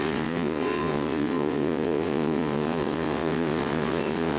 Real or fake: fake